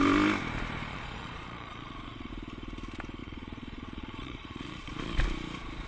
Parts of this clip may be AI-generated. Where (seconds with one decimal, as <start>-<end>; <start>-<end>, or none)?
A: 0.9-2.3; 3.2-5.2